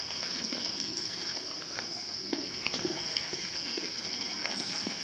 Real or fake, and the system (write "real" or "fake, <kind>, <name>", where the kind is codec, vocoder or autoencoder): fake, codec, SNAC